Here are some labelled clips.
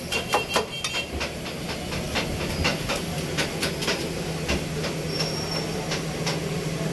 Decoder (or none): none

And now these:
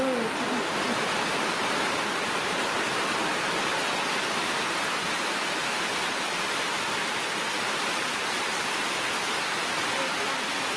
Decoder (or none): none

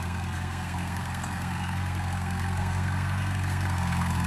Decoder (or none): codec, SNAC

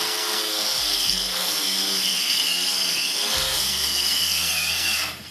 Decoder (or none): codec, SNAC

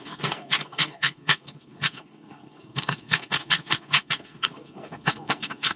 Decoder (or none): codec, SNAC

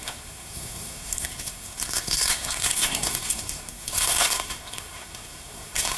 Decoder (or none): codec, SNAC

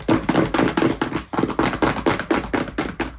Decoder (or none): none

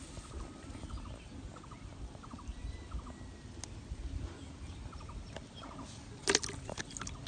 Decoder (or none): none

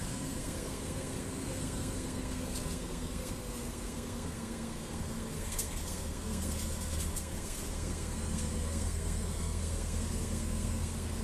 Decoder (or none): codec, SNAC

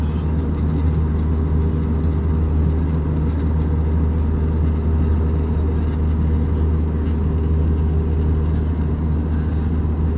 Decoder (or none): none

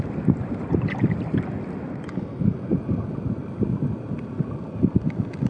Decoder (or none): none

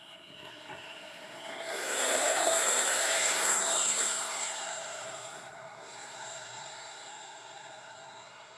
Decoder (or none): codec, SNAC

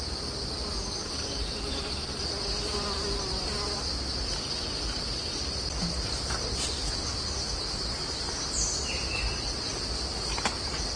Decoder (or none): none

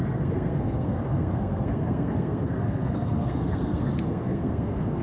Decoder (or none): codec, SNAC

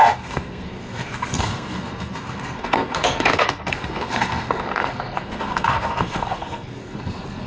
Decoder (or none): codec, SNAC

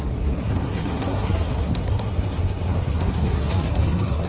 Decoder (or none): codec, SNAC